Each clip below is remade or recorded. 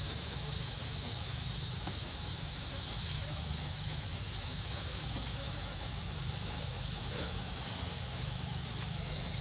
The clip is remade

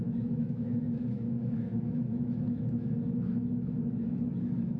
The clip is remade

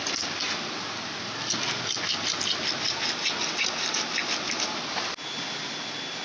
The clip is recorded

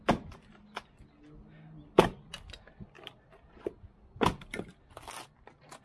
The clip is recorded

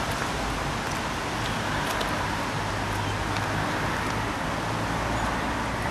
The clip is recorded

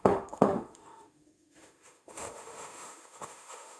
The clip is remade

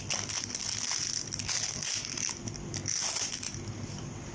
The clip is recorded